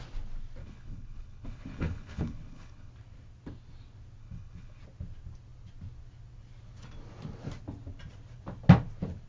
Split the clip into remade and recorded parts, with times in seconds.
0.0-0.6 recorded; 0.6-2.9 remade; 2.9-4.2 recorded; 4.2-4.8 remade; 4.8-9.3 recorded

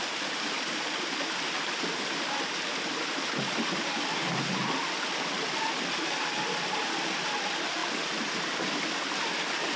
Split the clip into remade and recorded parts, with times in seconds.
0.0-9.8 recorded

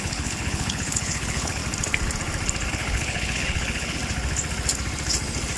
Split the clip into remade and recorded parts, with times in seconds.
0.0-1.6 remade; 1.6-2.7 recorded; 2.7-4.0 remade; 4.0-5.6 recorded

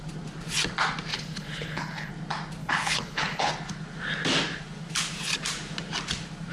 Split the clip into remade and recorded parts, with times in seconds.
0.0-1.1 recorded; 1.1-2.1 remade; 2.1-2.6 recorded; 2.6-3.5 remade; 3.5-6.5 recorded

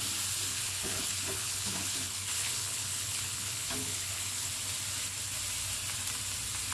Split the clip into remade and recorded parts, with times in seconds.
0.0-0.5 recorded; 0.5-4.5 remade; 4.5-6.7 recorded

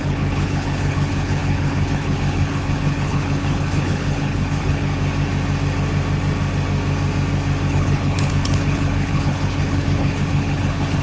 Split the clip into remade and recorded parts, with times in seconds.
0.0-4.9 remade; 4.9-7.7 recorded; 7.7-11.0 remade

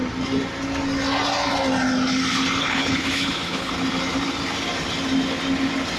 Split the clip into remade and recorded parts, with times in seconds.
0.0-2.6 recorded; 2.6-3.7 remade; 3.7-6.0 recorded

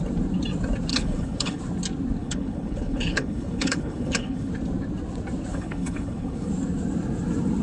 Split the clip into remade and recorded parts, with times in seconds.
0.0-0.9 recorded; 0.9-1.6 remade; 1.6-2.2 recorded; 2.2-4.5 remade; 4.5-5.5 recorded; 5.5-6.5 remade; 6.5-7.6 recorded